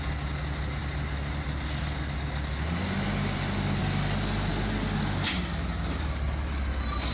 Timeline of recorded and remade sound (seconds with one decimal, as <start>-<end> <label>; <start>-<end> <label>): 0.0-7.1 recorded